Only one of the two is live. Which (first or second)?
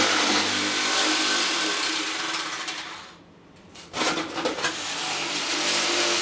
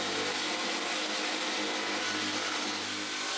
second